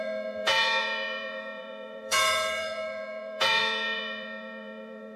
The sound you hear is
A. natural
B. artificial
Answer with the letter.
B